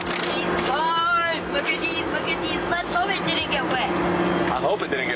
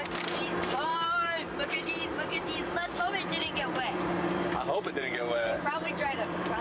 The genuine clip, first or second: first